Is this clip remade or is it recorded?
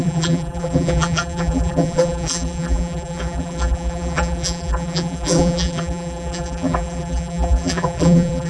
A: remade